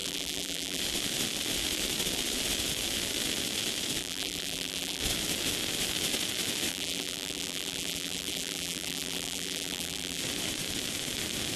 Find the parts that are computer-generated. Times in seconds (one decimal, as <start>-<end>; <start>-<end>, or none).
0.0-0.8; 4.0-5.0; 6.7-10.2